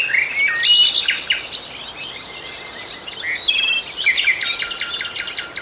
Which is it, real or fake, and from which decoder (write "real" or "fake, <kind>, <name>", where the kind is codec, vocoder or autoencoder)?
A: real